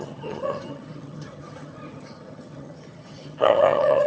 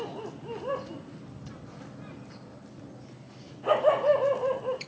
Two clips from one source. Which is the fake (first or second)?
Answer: first